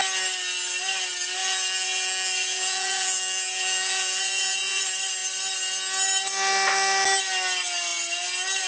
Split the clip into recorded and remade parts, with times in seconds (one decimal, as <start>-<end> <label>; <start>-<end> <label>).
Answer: 0.0-1.4 recorded; 1.4-4.8 remade; 4.8-8.7 recorded